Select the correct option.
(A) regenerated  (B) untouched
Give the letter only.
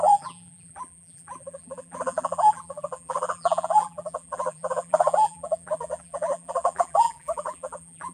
A